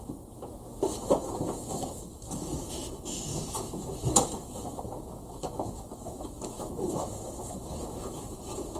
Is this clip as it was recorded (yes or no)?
no